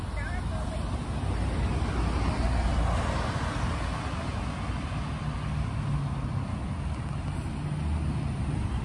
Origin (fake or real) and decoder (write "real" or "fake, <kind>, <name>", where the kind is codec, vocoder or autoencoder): real